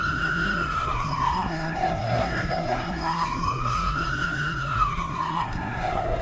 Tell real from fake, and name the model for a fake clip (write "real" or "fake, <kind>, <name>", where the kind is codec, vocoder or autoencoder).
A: fake, codec, SNAC